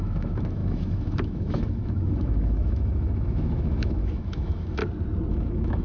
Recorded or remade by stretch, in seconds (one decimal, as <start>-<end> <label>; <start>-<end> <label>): 0.0-4.8 remade; 4.8-5.3 recorded; 5.3-5.8 remade